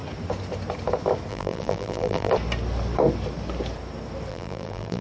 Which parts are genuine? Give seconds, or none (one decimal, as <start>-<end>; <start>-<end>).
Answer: 0.0-1.3; 2.3-4.3